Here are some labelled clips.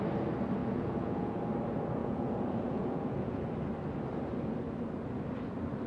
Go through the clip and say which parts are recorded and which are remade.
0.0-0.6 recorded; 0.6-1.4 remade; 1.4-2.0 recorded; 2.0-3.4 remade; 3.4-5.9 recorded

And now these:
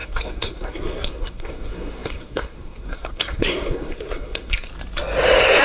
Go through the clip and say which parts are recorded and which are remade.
0.0-4.7 remade; 4.7-5.6 recorded

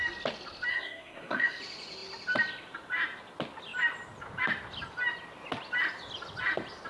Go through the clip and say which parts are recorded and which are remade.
0.0-0.7 recorded; 0.7-1.6 remade; 1.6-6.9 recorded

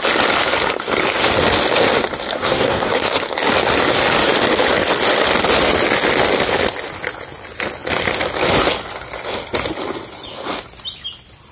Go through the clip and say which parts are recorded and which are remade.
0.0-2.3 recorded; 2.3-3.2 remade; 3.2-11.5 recorded

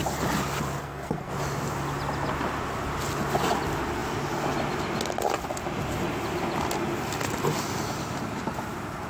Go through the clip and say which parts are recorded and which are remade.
0.0-0.8 recorded; 0.8-1.3 remade; 1.3-9.1 recorded

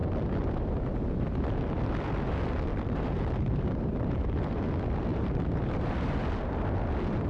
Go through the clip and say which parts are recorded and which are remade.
0.0-2.7 recorded; 2.7-4.5 remade; 4.5-5.1 recorded; 5.1-6.1 remade; 6.1-7.3 recorded

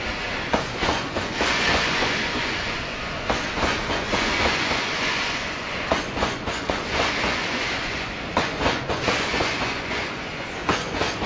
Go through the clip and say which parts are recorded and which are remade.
0.0-11.3 remade